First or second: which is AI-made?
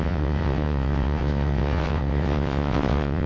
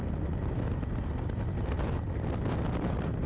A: first